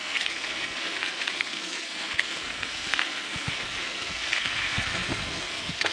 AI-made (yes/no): yes